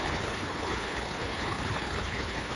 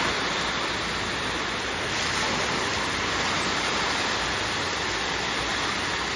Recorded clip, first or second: second